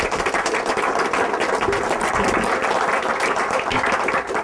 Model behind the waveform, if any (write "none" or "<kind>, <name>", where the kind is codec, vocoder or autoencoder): none